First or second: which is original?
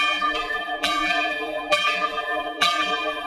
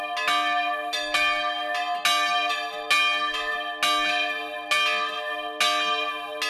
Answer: second